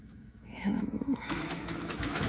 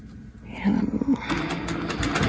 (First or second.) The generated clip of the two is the first